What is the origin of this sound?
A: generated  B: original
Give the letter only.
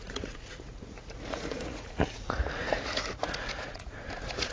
A